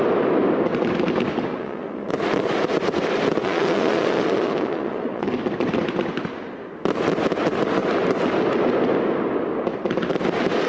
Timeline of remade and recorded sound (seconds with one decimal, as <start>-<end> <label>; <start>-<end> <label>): 0.0-1.5 recorded; 1.5-2.1 remade; 2.1-3.4 recorded; 3.4-5.3 remade; 5.3-10.7 recorded